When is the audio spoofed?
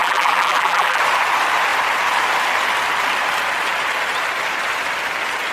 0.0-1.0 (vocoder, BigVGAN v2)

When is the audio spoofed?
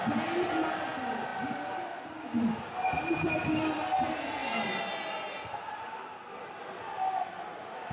none